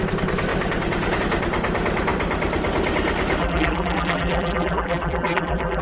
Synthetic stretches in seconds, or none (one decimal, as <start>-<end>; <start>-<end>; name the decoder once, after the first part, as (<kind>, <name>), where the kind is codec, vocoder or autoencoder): 3.4-5.8 (vocoder, BigVGAN v2)